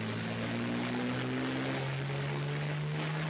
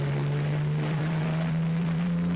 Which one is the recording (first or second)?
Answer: first